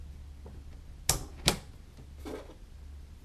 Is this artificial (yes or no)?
no